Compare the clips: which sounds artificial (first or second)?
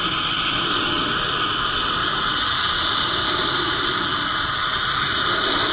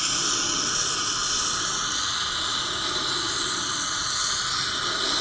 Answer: first